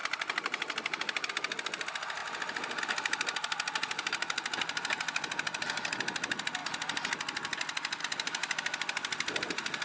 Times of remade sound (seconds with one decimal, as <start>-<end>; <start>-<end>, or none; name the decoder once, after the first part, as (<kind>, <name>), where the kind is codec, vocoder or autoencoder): 0.0-2.2 (vocoder, BigVGAN v2); 2.8-6.6; 8.0-9.8